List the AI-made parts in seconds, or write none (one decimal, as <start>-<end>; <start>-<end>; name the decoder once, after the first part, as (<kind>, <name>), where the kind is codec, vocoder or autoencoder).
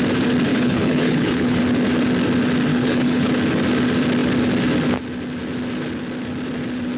0.5-1.6 (codec, HILCodec); 2.7-3.3